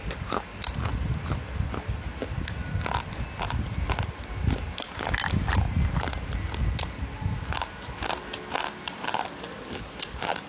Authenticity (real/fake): real